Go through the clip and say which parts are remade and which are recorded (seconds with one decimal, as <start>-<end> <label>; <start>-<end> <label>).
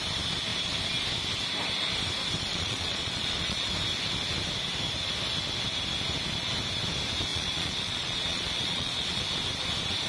0.0-2.5 recorded; 2.5-3.7 remade; 3.7-7.3 recorded; 7.3-9.2 remade; 9.2-10.1 recorded